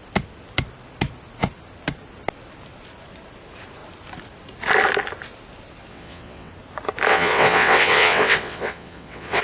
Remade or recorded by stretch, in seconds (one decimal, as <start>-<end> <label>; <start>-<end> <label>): 0.0-5.9 recorded; 5.9-6.5 remade; 6.5-7.1 recorded; 7.1-9.4 remade